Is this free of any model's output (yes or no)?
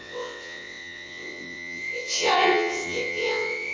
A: no